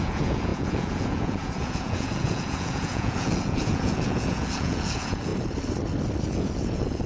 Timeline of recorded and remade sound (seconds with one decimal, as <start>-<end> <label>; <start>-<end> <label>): 0.0-5.3 remade; 5.3-6.2 recorded; 6.2-7.1 remade